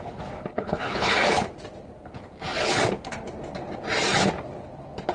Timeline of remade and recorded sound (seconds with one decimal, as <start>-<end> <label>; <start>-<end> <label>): 0.0-0.5 recorded; 0.5-1.1 remade; 1.1-5.1 recorded